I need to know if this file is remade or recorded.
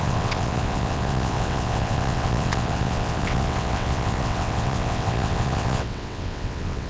remade